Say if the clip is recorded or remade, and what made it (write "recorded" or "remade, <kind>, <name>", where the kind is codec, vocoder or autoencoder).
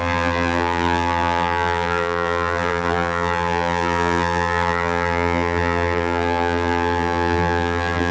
remade, vocoder, BigVGAN v2